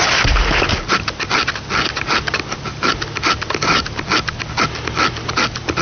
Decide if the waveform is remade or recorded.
recorded